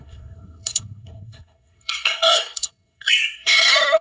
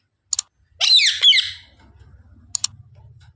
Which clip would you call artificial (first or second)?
first